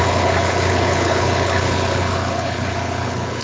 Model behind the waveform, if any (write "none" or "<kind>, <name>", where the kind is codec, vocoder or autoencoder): codec, HILCodec